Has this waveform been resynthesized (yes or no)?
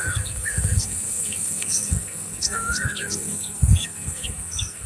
yes